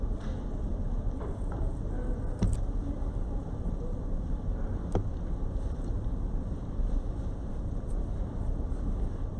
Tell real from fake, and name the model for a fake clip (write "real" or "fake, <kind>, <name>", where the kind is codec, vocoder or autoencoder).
fake, vocoder, BigVGAN v2